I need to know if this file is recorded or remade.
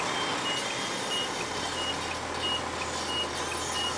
recorded